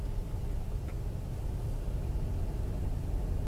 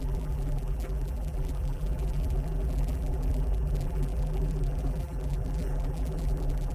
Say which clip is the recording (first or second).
first